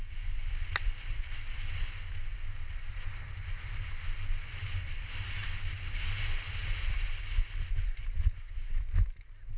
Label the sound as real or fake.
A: real